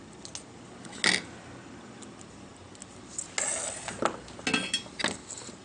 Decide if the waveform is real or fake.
real